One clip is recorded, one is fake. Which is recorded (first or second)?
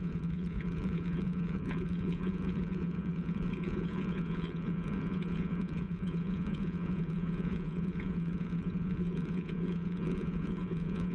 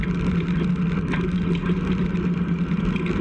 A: second